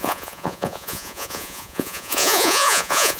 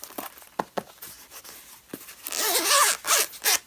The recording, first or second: second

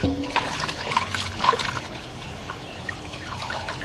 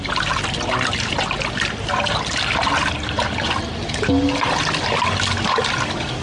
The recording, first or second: second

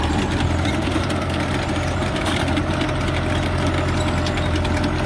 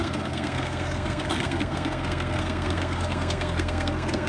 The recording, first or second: first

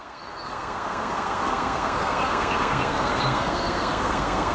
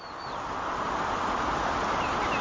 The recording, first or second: second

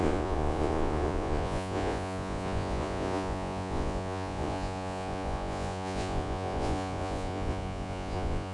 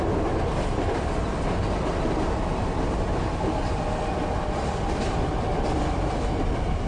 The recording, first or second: second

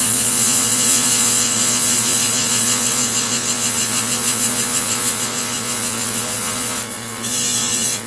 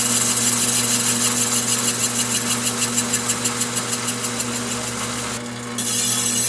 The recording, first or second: second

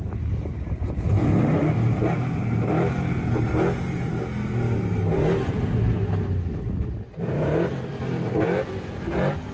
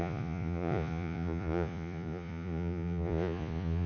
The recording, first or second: first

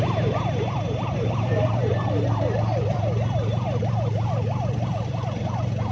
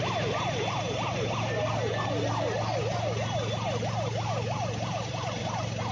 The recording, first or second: second